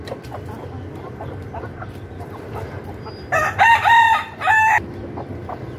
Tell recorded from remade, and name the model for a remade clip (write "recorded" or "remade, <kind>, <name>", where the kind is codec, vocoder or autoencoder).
remade, vocoder, BigVGAN v2